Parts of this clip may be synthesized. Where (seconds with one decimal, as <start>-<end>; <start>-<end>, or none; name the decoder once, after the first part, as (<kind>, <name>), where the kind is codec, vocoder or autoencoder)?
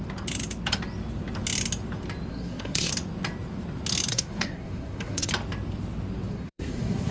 2.3-2.9 (codec, SNAC); 4.1-5.3; 6.3-7.1